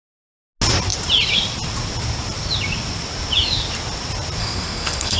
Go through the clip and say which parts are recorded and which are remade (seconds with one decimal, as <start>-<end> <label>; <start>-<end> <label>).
0.0-4.4 recorded; 4.4-5.2 remade